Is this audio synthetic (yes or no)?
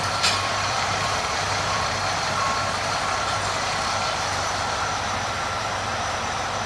yes